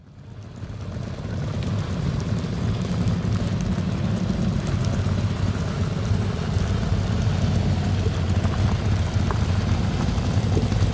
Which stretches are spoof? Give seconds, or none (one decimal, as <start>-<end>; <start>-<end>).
none